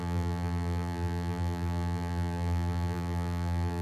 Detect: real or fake fake